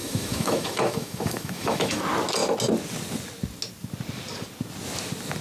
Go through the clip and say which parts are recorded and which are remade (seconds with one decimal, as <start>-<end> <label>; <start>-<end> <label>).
0.0-2.0 remade; 2.0-5.4 recorded